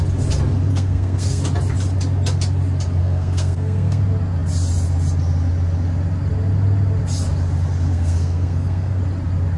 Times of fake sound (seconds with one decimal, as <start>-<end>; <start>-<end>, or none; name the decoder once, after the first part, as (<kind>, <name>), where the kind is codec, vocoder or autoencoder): 0.7-1.4 (codec, SNAC); 3.0-4.0; 7.9-9.0